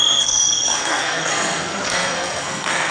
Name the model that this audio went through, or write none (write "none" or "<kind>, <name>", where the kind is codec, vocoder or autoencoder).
codec, SNAC